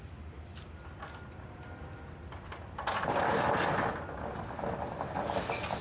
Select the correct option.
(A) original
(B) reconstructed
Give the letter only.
A